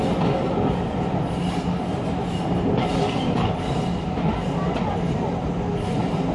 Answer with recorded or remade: recorded